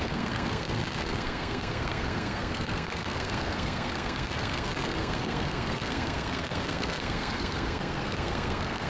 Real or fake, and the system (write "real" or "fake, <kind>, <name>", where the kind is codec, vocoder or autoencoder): fake, codec, SNAC